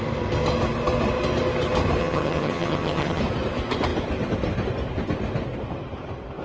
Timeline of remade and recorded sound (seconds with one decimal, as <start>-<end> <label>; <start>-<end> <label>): 0.0-2.0 recorded; 2.0-3.2 remade; 3.2-6.4 recorded